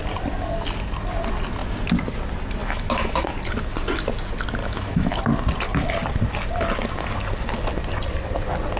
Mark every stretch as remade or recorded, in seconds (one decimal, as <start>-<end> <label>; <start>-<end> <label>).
0.0-2.6 recorded; 2.6-3.3 remade; 3.3-4.6 recorded; 4.6-5.2 remade; 5.2-8.8 recorded